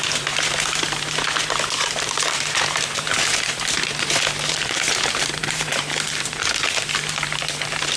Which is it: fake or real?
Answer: fake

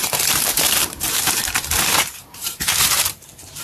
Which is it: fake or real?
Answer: fake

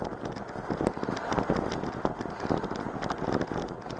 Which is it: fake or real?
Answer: real